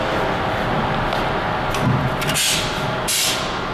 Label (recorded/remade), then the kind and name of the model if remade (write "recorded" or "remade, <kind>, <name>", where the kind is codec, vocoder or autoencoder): recorded